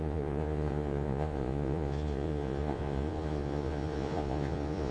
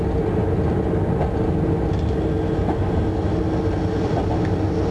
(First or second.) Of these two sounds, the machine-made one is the first